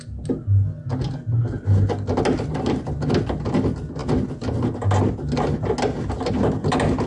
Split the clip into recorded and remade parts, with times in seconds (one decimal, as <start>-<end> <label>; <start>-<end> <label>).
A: 0.0-7.1 recorded

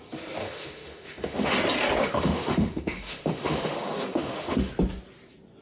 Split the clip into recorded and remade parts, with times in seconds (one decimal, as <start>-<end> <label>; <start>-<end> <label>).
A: 0.0-0.4 recorded; 0.4-1.6 remade; 1.6-2.0 recorded; 2.0-4.7 remade; 4.7-5.6 recorded

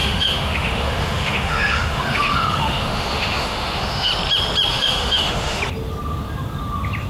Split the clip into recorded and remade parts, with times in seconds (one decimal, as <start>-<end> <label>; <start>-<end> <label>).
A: 0.0-4.1 remade; 4.1-4.7 recorded; 4.7-5.6 remade; 5.6-7.1 recorded

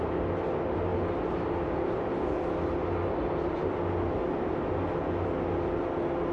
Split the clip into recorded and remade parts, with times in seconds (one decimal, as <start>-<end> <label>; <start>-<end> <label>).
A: 0.0-6.3 recorded

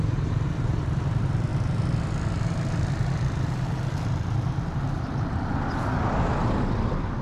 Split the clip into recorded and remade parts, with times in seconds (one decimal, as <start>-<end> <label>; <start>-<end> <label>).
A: 0.0-7.2 recorded

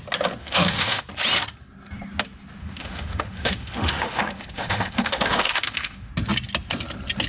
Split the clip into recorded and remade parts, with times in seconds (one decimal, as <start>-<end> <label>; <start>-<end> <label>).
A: 0.0-0.4 recorded; 0.4-1.0 remade; 1.0-2.6 recorded; 2.6-6.1 remade; 6.1-7.3 recorded

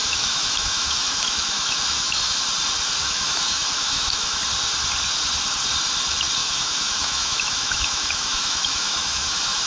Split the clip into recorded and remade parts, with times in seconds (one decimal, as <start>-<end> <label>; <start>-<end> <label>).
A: 0.0-2.4 remade; 2.4-3.0 recorded; 3.0-4.4 remade; 4.4-6.4 recorded; 6.4-9.7 remade

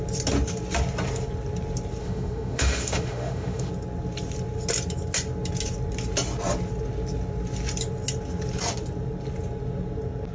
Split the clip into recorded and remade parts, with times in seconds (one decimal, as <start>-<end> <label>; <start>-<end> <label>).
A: 0.0-2.0 recorded; 2.0-3.7 remade; 3.7-10.3 recorded